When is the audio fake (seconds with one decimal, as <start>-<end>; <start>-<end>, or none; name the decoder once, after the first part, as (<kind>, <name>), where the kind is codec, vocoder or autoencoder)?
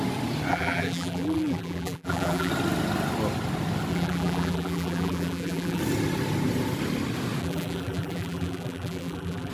0.5-2.5 (vocoder, BigVGAN v2); 3.9-5.8; 7.4-9.5